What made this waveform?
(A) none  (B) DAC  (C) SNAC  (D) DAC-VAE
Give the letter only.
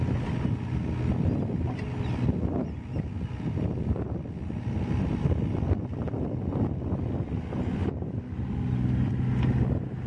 A